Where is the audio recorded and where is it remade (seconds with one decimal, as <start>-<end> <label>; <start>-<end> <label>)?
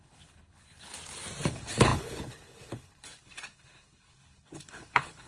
0.0-0.9 remade; 0.9-1.4 recorded; 1.4-5.3 remade